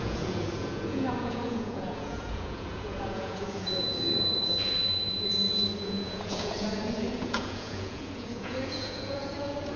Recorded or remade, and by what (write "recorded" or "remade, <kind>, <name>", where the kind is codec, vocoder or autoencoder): remade, vocoder, Vocos